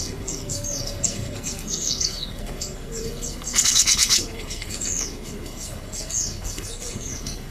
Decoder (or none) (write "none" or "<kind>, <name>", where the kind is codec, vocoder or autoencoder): codec, SNAC